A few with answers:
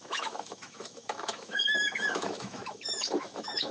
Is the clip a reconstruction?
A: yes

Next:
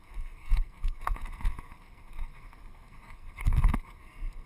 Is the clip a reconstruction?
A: yes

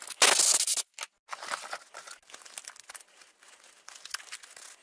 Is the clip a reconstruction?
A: no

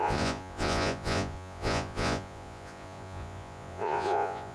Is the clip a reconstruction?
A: yes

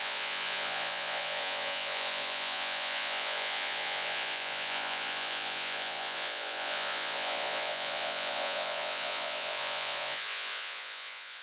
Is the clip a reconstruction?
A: yes